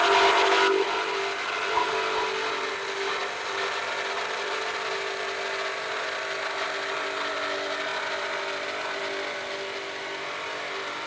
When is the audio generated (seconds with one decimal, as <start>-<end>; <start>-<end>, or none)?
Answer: none